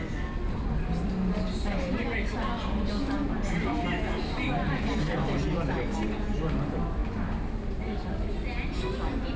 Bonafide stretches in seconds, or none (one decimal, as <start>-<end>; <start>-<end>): 0.0-9.4